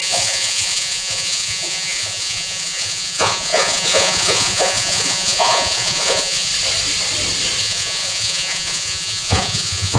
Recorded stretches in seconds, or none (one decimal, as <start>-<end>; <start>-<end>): 6.5-7.6